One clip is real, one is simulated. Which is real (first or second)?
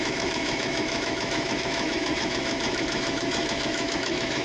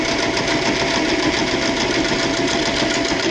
second